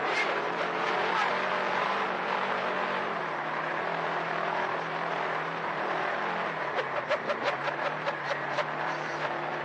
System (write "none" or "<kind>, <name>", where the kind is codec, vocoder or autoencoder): vocoder, BigVGAN v2